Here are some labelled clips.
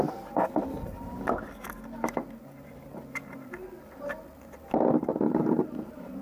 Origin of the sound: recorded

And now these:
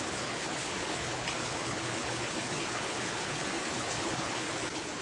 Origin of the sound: remade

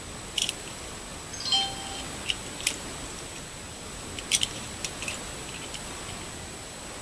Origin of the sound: recorded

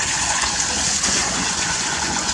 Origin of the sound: remade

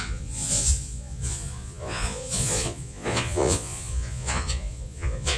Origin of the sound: remade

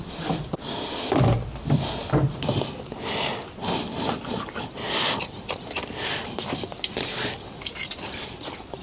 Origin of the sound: recorded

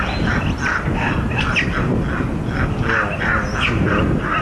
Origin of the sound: recorded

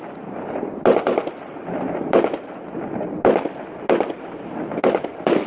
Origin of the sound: recorded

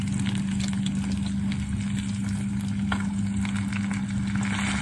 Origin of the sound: recorded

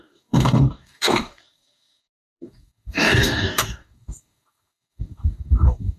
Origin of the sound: remade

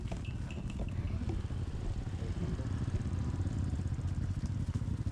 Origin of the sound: recorded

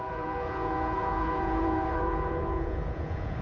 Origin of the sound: remade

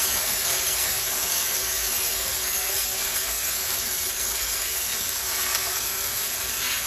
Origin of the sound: remade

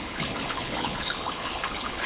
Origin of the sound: remade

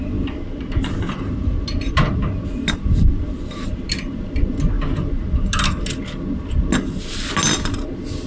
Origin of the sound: recorded